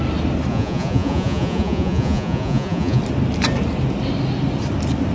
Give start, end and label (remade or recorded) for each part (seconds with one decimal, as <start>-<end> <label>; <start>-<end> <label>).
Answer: 0.0-0.5 recorded; 0.5-3.0 remade; 3.0-5.1 recorded